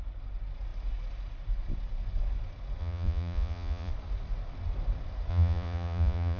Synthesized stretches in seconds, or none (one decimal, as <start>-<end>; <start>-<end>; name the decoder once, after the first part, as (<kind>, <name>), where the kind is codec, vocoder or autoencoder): 2.8-3.9 (vocoder, Vocos); 5.3-6.4